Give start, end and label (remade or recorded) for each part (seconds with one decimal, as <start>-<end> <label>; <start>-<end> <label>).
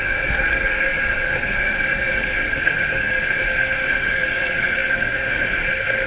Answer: 0.0-6.1 remade